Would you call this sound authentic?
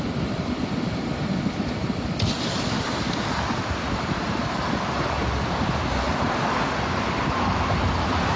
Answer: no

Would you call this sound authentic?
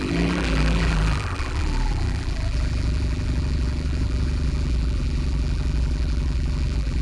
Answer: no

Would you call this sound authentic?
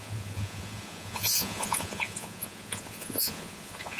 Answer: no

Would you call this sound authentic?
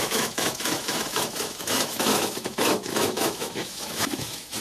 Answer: no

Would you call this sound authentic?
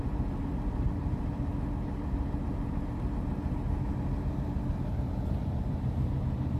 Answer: no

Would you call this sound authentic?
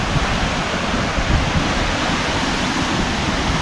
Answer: yes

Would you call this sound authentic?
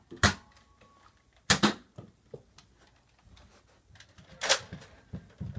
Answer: yes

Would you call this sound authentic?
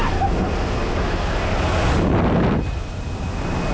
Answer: yes